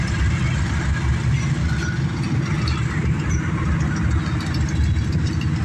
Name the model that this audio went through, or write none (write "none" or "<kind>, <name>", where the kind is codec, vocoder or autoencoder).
none